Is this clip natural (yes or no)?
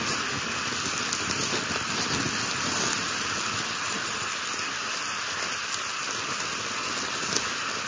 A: yes